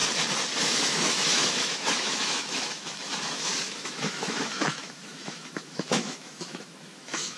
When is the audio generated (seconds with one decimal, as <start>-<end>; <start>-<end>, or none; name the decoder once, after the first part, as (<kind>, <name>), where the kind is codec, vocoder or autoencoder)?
0.6-7.4 (autoencoder, DAC-VAE)